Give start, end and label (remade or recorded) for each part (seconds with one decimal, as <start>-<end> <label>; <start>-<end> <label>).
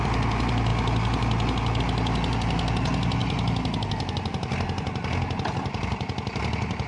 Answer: 0.0-6.9 recorded